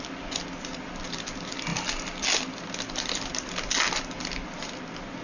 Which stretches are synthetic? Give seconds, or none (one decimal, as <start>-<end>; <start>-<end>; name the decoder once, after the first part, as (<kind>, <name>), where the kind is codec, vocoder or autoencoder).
none